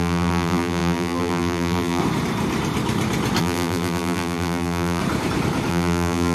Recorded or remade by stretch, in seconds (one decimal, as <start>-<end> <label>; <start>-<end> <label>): 0.0-2.0 remade; 2.0-3.4 recorded; 3.4-5.0 remade; 5.0-5.7 recorded; 5.7-6.3 remade